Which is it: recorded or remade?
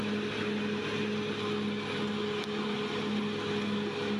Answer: recorded